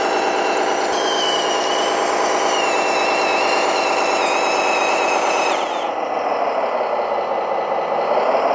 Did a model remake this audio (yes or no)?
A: no